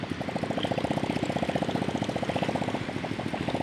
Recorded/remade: recorded